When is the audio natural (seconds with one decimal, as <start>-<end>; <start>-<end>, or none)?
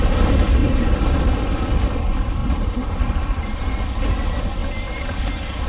0.0-0.6; 1.2-2.4; 3.0-4.6; 5.2-5.7